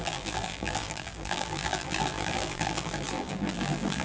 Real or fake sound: fake